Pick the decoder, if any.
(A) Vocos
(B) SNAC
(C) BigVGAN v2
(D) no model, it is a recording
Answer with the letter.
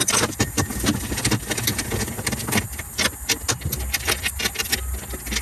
D